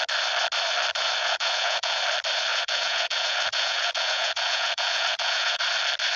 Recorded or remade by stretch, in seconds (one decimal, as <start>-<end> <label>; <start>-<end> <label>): 0.0-1.2 recorded; 1.2-2.0 remade; 2.0-2.5 recorded; 2.5-5.6 remade; 5.6-6.2 recorded